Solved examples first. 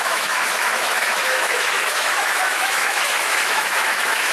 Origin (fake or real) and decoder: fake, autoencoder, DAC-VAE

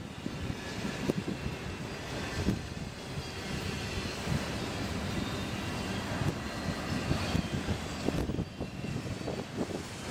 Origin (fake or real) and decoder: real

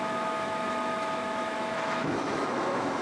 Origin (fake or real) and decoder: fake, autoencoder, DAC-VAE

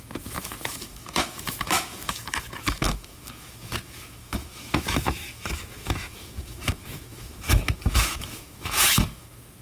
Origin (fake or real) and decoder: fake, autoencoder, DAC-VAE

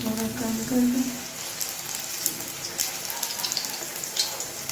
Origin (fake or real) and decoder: real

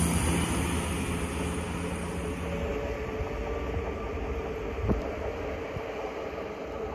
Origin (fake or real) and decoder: real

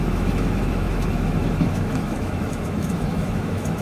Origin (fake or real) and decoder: fake, autoencoder, DAC-VAE